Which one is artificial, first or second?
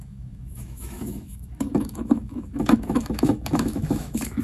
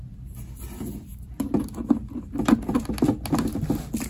first